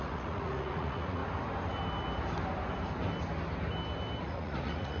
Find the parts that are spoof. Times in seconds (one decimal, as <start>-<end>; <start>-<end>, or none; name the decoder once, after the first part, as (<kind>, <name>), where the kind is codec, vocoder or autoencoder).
0.0-1.2 (vocoder, Vocos); 4.2-5.0